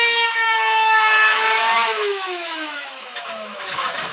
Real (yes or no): no